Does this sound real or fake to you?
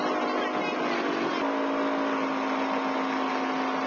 real